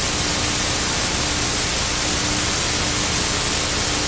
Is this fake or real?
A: real